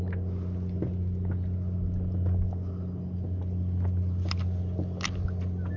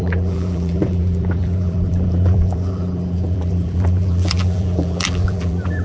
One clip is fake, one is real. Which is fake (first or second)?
second